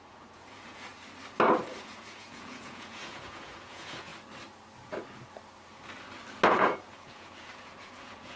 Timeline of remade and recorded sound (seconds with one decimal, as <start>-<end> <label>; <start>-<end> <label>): 0.0-0.9 remade; 0.9-1.7 recorded; 1.7-4.1 remade; 4.1-6.5 recorded; 6.5-8.4 remade